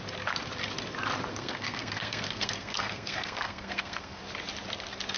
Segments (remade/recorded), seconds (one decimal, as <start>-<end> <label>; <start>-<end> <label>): 0.0-1.3 recorded; 1.3-4.2 remade; 4.2-5.2 recorded